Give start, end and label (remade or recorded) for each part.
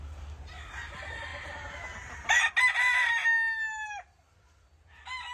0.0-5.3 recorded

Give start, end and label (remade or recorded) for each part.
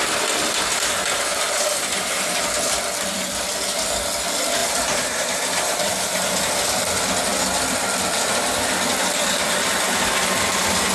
0.0-1.3 recorded; 1.3-2.4 remade; 2.4-4.6 recorded; 4.6-6.4 remade; 6.4-10.9 recorded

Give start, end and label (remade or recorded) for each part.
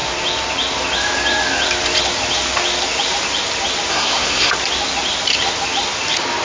0.0-3.9 recorded; 3.9-4.5 remade; 4.5-6.4 recorded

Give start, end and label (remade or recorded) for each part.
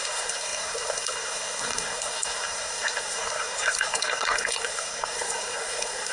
0.0-6.1 remade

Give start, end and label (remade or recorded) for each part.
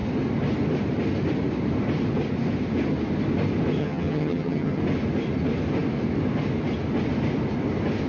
0.0-3.8 recorded; 3.8-4.8 remade; 4.8-8.1 recorded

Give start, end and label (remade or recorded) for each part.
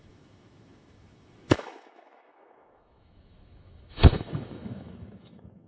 0.0-5.7 remade